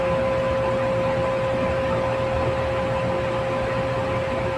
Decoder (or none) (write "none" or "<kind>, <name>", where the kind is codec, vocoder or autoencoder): none